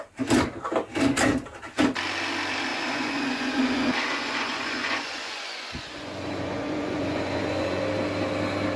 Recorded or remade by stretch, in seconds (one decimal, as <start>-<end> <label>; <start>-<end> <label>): 0.0-2.7 recorded; 2.7-7.8 remade; 7.8-8.8 recorded